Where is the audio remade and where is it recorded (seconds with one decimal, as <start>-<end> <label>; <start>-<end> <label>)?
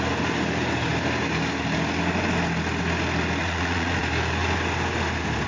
0.0-3.4 recorded; 3.4-4.0 remade; 4.0-5.5 recorded